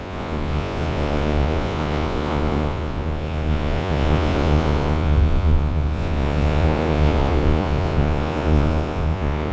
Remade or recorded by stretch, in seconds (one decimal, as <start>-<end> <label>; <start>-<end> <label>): 0.0-9.5 remade